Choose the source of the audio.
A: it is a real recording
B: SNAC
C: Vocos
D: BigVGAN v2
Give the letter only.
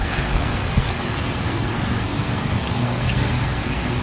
B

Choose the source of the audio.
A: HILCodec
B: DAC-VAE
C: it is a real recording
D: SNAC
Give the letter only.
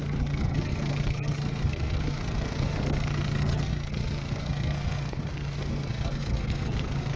D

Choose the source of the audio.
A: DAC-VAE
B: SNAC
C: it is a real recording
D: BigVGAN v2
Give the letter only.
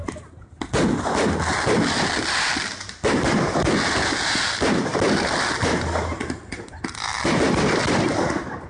C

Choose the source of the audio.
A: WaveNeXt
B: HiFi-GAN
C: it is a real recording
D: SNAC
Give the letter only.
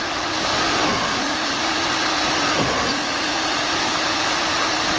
C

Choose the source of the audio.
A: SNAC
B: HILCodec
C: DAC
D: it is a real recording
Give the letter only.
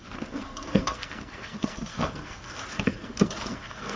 A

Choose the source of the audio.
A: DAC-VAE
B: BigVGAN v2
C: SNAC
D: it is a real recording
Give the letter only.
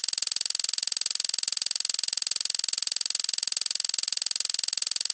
D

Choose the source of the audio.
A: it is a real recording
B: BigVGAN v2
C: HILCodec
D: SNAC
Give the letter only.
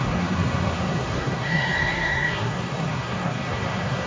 D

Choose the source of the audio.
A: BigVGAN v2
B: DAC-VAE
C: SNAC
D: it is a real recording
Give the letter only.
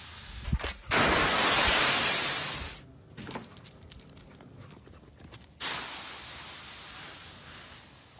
D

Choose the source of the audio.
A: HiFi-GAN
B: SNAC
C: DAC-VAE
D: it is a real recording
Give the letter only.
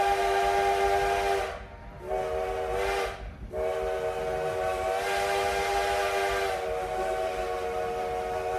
D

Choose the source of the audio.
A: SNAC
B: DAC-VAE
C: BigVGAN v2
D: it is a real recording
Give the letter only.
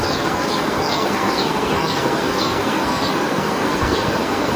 A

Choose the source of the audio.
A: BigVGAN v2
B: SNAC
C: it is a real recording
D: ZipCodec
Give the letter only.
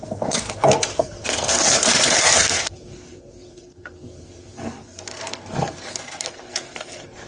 B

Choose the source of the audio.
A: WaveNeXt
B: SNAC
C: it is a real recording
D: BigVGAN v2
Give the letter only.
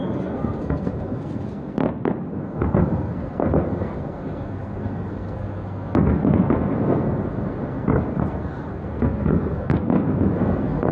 B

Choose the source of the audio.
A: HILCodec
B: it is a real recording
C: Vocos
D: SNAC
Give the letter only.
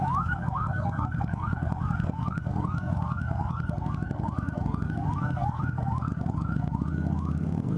D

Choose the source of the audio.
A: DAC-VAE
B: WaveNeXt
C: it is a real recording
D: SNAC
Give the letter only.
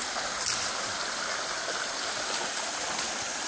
C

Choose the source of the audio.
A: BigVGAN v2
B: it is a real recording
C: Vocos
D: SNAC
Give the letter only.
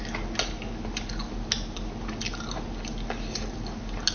B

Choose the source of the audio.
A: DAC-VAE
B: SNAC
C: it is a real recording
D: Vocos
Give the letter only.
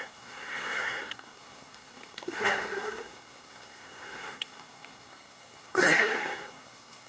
B